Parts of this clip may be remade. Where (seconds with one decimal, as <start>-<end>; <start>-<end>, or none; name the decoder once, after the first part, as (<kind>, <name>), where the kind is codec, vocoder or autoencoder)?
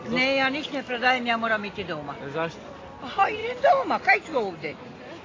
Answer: none